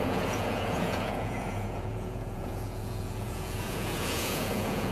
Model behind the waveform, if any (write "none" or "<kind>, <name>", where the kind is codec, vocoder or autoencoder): vocoder, Vocos